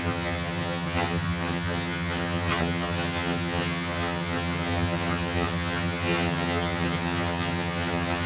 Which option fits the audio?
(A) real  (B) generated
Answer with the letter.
B